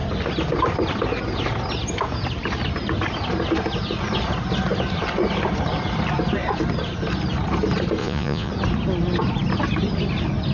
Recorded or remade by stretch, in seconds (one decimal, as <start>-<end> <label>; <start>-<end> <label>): 0.0-8.0 recorded; 8.0-8.5 remade; 8.5-10.5 recorded